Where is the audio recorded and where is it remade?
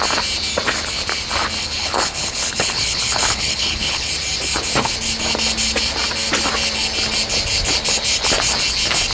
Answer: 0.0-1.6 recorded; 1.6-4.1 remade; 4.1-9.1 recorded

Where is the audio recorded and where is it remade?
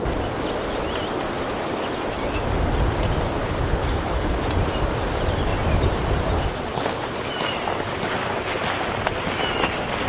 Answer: 0.0-3.4 recorded; 3.4-4.4 remade; 4.4-6.7 recorded; 6.7-7.3 remade; 7.3-10.1 recorded